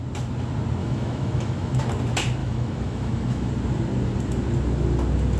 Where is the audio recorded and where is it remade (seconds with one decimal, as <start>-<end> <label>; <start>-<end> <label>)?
0.0-0.8 recorded; 0.8-1.8 remade; 1.8-2.4 recorded; 2.4-3.5 remade; 3.5-5.4 recorded